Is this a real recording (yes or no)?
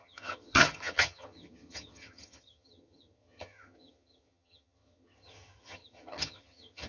no